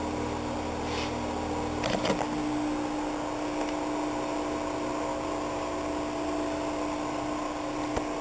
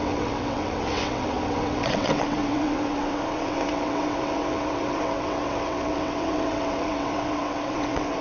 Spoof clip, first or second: second